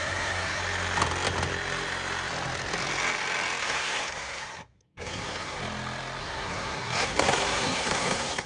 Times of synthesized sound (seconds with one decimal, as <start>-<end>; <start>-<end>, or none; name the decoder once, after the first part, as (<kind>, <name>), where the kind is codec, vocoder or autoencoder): 0.0-0.6 (codec, SNAC); 3.6-5.6; 6.2-8.5